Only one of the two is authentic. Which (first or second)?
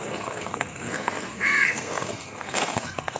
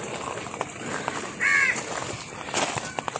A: second